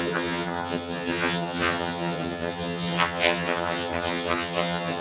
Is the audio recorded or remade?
remade